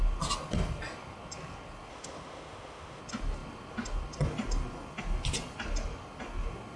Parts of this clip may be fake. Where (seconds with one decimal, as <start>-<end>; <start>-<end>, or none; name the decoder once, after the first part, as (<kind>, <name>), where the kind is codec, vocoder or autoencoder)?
1.9-3.0 (autoencoder, DAC-VAE)